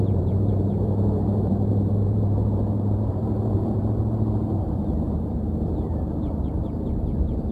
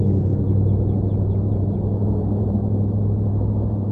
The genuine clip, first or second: second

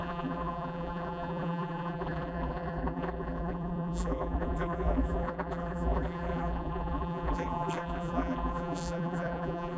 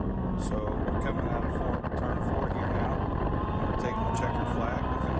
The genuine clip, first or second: second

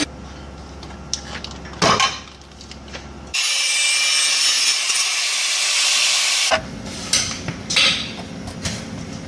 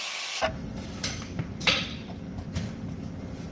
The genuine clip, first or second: first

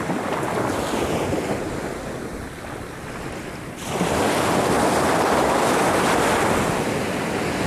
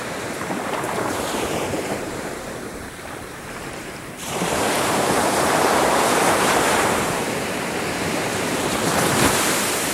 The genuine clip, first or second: first